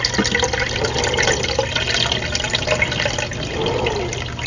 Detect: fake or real real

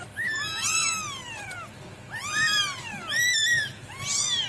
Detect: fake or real real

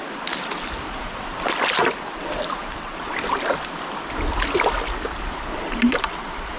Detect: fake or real real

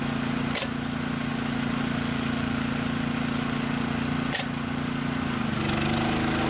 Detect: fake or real real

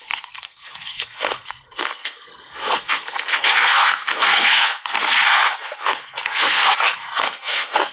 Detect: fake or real fake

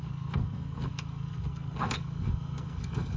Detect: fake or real fake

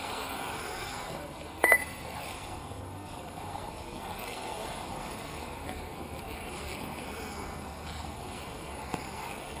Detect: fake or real fake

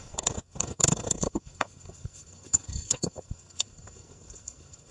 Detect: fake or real fake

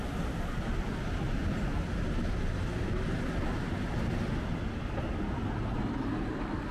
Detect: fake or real real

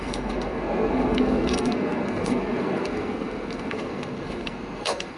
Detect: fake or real fake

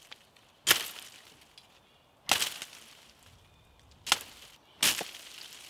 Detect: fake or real real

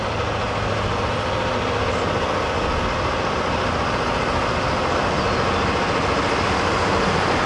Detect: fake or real real